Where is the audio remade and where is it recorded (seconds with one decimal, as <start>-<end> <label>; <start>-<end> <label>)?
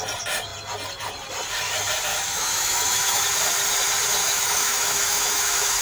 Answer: 0.0-2.1 recorded; 2.1-3.2 remade; 3.2-4.2 recorded; 4.2-5.8 remade